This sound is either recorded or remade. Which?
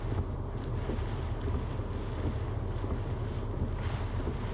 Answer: recorded